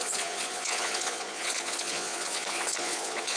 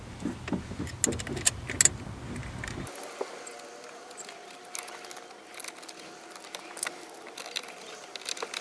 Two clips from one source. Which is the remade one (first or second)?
first